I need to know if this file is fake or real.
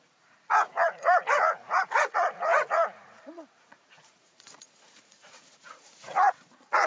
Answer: fake